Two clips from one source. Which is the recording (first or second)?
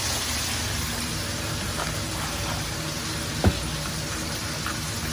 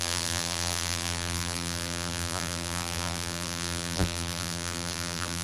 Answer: first